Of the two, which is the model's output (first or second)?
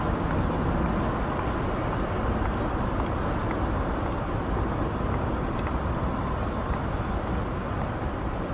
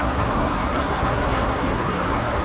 second